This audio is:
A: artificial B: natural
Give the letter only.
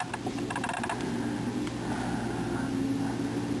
B